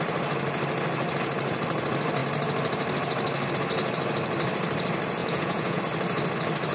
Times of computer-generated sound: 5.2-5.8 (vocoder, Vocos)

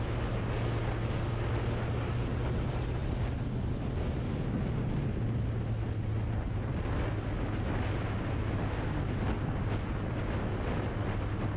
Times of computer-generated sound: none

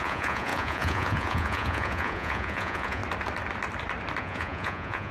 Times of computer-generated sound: 0.0-3.0 (vocoder, Vocos); 4.2-5.1